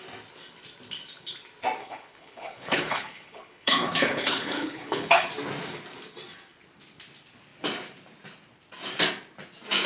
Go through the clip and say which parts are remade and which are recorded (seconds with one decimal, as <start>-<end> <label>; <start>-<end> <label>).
0.0-1.8 recorded; 1.8-5.3 remade; 5.3-9.9 recorded